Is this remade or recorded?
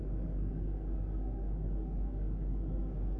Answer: remade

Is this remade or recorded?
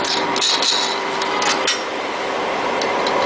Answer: recorded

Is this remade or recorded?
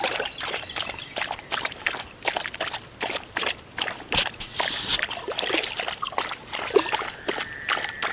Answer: remade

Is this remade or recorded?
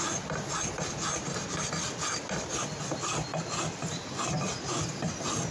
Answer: recorded